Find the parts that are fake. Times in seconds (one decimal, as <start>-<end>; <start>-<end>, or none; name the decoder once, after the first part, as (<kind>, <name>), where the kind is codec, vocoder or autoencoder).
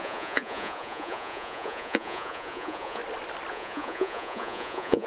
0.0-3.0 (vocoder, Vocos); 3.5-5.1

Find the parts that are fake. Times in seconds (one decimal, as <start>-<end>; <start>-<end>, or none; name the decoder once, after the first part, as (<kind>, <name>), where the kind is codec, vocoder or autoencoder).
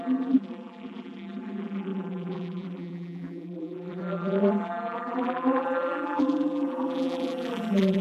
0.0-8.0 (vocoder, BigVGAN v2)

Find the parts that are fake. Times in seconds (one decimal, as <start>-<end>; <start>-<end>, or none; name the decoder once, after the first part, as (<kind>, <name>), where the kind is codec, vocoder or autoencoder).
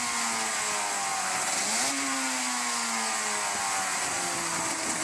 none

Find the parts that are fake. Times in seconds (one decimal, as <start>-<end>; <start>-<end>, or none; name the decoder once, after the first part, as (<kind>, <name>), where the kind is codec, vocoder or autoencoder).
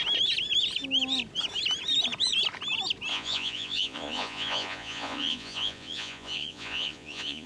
3.1-7.5 (vocoder, Vocos)